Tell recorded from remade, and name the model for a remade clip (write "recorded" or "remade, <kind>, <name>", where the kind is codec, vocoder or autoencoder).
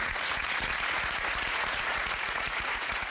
remade, vocoder, Vocos